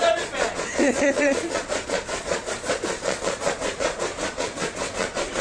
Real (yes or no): no